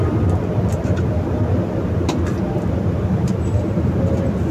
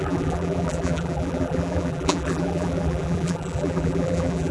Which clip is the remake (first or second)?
second